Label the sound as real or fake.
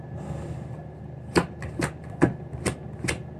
real